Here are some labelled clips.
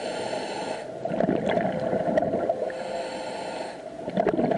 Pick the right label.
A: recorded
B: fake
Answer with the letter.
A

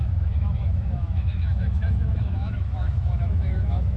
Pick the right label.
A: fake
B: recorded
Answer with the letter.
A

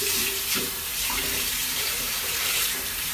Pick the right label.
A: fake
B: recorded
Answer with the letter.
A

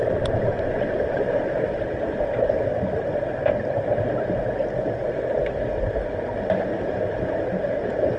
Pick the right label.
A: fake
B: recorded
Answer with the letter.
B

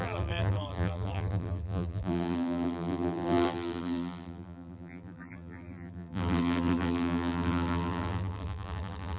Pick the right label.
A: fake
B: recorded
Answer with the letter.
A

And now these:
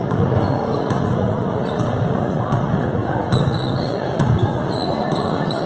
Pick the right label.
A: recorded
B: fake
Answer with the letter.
B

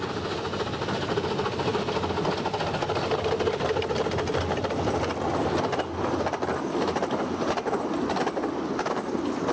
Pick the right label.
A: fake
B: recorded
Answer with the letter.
B